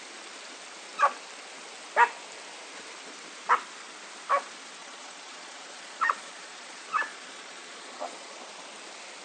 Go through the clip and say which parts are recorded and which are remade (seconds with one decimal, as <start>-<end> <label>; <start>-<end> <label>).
0.0-4.8 recorded; 4.8-8.4 remade; 8.4-9.2 recorded